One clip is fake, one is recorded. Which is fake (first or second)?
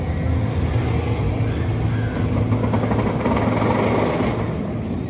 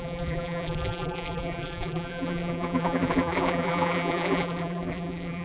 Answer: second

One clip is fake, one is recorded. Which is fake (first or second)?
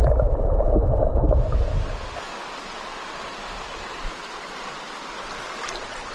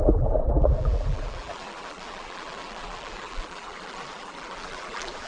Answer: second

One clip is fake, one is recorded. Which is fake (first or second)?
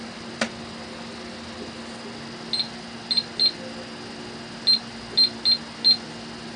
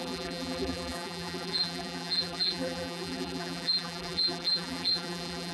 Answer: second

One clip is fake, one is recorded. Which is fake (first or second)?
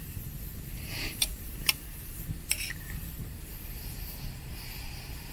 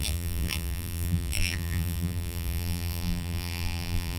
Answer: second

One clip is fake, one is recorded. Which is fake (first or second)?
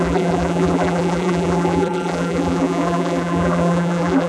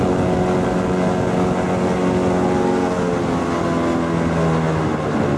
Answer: first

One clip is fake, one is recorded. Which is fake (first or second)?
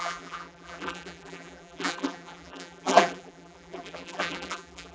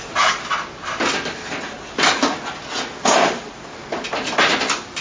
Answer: first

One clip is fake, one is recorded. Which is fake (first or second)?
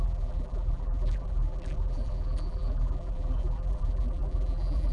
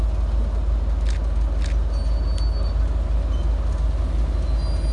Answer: first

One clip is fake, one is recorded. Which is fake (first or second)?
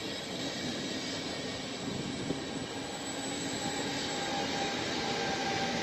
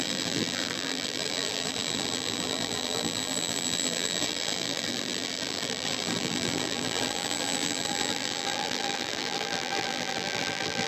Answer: second